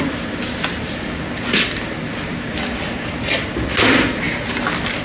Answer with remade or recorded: recorded